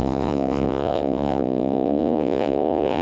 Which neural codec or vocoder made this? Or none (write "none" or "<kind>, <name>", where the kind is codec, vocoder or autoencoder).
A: vocoder, Vocos